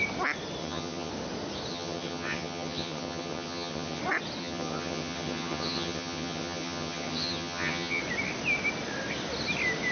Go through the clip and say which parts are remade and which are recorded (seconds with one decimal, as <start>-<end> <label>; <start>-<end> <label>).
0.0-0.6 recorded; 0.6-1.1 remade; 1.1-1.7 recorded; 1.7-4.0 remade; 4.0-4.4 recorded; 4.4-8.0 remade; 8.0-9.9 recorded